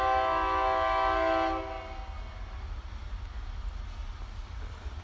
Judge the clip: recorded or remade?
recorded